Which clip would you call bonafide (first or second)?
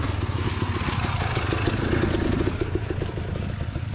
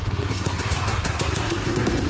first